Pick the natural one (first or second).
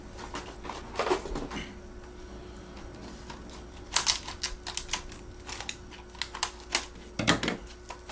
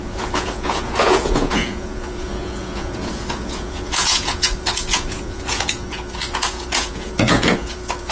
first